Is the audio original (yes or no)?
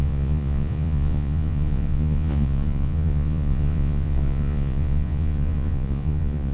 no